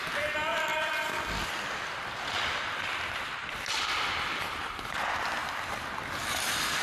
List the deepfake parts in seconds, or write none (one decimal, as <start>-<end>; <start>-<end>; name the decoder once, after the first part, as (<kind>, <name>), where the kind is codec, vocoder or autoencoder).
none